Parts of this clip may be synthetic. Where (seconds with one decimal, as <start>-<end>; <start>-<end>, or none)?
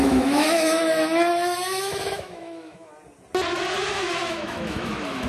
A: 0.0-2.9; 3.9-5.3